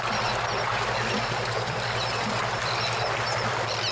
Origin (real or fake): real